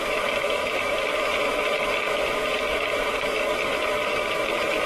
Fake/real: fake